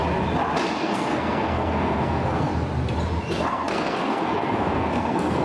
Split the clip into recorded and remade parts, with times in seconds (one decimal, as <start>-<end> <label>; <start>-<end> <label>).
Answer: 0.0-0.8 recorded; 0.8-2.5 remade; 2.5-3.5 recorded; 3.5-5.4 remade